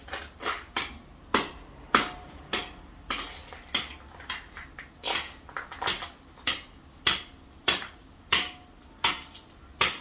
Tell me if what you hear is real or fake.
real